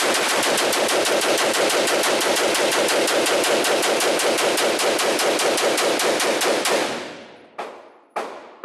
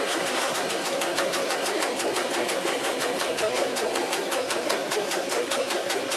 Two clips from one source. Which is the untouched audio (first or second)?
first